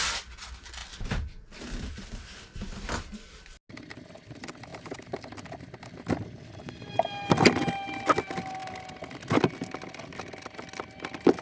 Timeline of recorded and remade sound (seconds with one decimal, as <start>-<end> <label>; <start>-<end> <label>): 0.0-4.7 recorded; 4.7-5.3 remade; 5.3-11.4 recorded